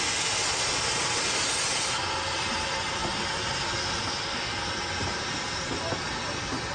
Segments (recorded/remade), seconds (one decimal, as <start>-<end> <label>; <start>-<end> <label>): 0.0-6.7 recorded